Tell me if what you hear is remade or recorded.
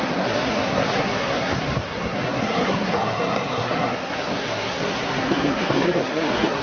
remade